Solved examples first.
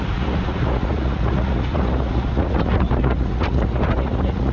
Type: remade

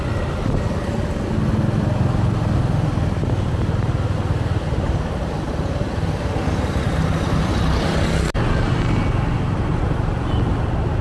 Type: recorded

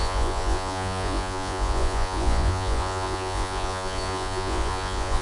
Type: remade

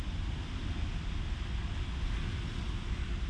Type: recorded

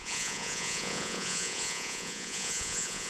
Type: remade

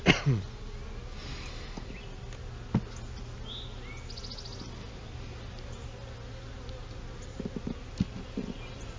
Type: recorded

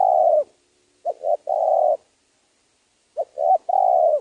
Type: recorded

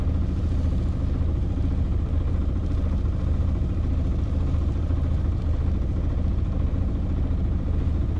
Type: recorded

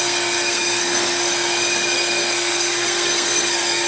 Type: remade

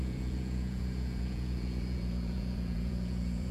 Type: remade